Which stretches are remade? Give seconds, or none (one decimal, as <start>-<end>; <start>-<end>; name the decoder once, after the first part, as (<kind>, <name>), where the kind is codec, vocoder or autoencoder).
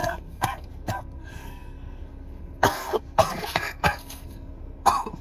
0.0-5.2 (codec, SNAC)